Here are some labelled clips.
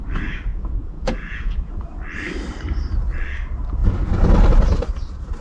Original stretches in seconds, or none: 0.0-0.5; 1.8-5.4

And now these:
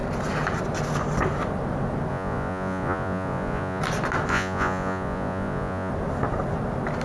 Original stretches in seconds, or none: 0.0-2.1; 3.8-4.3; 5.9-7.0

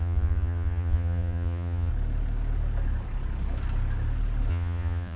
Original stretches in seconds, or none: 1.9-4.5

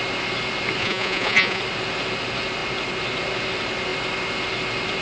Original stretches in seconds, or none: 0.0-0.8; 1.6-5.0

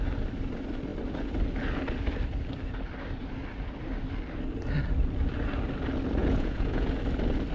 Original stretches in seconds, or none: 0.0-6.2; 6.9-7.5

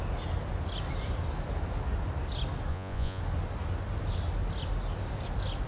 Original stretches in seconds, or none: 0.0-2.7; 3.2-5.7

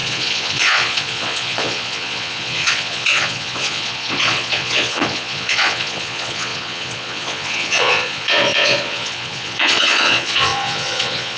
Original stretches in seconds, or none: none